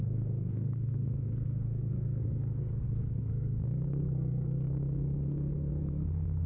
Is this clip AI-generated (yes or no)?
yes